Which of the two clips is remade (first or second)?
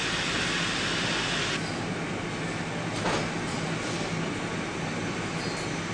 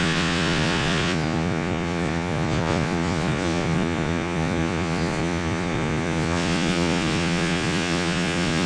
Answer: second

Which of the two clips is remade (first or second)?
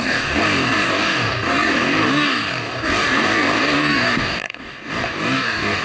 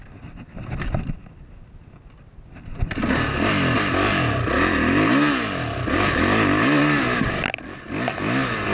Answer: first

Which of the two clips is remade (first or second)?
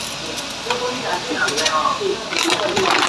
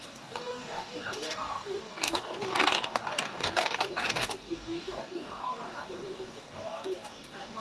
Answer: second